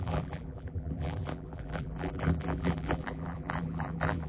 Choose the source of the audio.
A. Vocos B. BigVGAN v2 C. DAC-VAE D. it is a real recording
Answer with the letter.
B